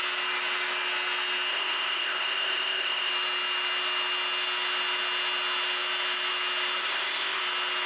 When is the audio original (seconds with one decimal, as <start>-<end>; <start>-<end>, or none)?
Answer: 0.0-1.5; 3.1-6.8; 7.4-7.9

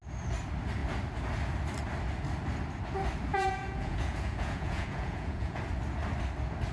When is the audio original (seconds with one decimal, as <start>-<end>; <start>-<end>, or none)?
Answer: 0.0-3.3; 5.6-6.7

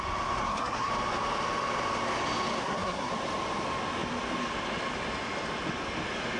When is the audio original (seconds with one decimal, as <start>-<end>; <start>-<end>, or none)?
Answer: 0.0-0.4; 0.9-2.6; 3.1-6.4

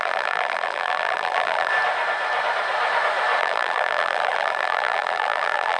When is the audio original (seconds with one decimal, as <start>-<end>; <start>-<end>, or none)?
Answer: 1.7-3.4

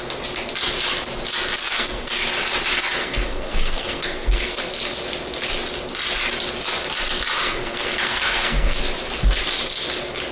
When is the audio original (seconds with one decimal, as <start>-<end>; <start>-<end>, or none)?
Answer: 0.0-1.6; 2.1-3.0; 4.7-7.4; 8.8-10.3

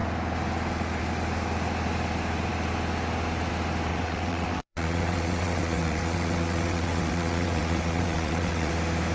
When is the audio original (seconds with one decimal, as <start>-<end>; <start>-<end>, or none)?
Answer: 0.0-3.9; 8.7-9.1

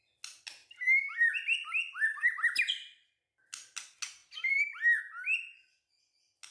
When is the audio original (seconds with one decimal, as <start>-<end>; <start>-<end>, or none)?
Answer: 0.0-0.6; 1.3-2.1; 3.1-4.2; 5.0-6.5

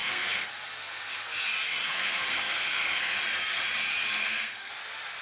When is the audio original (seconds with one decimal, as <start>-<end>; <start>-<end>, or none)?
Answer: 0.5-1.8; 3.0-4.2; 4.7-5.2